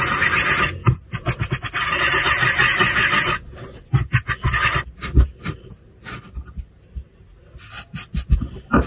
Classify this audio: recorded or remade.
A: recorded